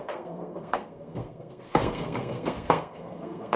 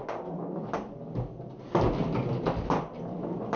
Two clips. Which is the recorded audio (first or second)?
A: second